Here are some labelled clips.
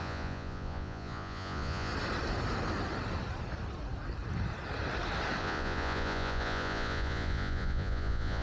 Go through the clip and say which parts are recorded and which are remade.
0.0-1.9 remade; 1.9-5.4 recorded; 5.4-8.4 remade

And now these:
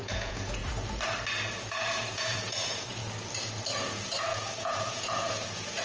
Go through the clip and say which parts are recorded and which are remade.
0.0-0.6 remade; 0.6-1.6 recorded; 1.6-3.0 remade; 3.0-3.8 recorded; 3.8-5.8 remade

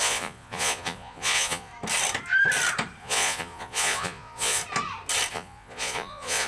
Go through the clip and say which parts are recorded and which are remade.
0.0-1.7 remade; 1.7-3.0 recorded; 3.0-4.6 remade; 4.6-5.3 recorded; 5.3-6.5 remade

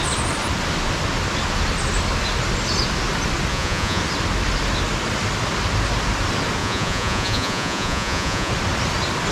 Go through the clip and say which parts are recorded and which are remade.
0.0-3.5 recorded; 3.5-4.0 remade; 4.0-6.6 recorded; 6.6-8.5 remade; 8.5-9.3 recorded

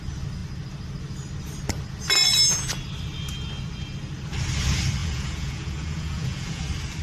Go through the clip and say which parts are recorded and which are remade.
0.0-5.0 recorded; 5.0-6.6 remade; 6.6-7.0 recorded

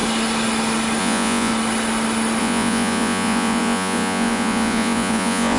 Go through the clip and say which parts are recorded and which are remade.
0.0-1.0 recorded; 1.0-1.5 remade; 1.5-2.4 recorded; 2.4-5.6 remade

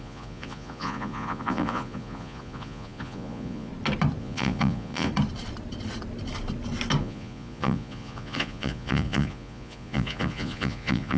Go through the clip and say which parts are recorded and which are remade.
0.0-3.7 remade; 3.7-4.2 recorded; 4.2-5.1 remade; 5.1-7.0 recorded; 7.0-11.2 remade